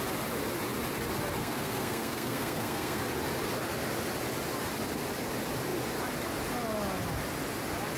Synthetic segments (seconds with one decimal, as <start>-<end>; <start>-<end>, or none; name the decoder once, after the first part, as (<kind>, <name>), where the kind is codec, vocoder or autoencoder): 1.4-3.0 (codec, SNAC)